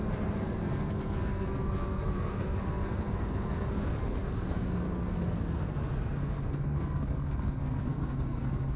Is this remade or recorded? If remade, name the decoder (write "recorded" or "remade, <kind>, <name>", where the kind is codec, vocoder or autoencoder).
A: remade, codec, SNAC